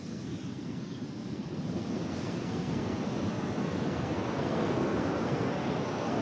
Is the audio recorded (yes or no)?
no